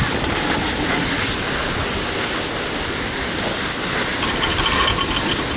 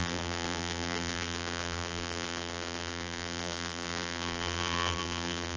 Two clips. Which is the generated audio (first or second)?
second